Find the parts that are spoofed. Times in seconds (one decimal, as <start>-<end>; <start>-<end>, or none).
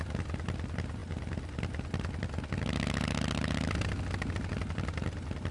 none